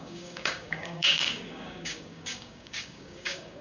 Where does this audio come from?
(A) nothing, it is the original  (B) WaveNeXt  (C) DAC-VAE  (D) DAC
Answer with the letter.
D